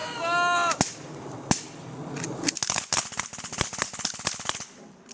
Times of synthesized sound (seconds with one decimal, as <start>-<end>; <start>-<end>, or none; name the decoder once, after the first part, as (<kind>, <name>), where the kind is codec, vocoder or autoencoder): none